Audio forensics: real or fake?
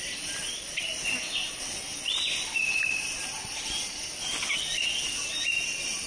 real